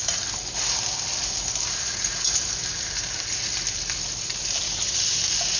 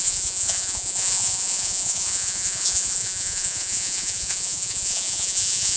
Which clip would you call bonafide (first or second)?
first